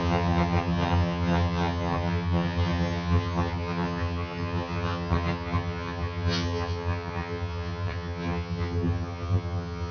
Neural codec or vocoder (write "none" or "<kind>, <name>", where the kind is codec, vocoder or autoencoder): vocoder, HiFi-GAN